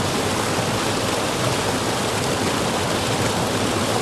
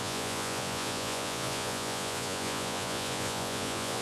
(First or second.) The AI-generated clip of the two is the second